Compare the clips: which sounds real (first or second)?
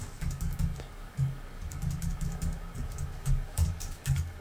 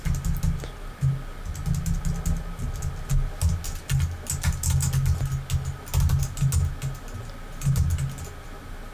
second